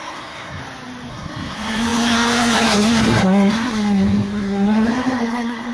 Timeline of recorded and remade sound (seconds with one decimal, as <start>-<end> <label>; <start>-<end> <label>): 0.0-0.6 remade; 0.6-1.1 recorded; 1.1-5.7 remade